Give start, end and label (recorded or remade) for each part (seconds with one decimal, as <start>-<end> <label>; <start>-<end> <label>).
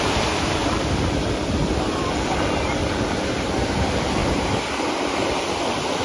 0.0-4.2 remade; 4.2-4.7 recorded; 4.7-6.0 remade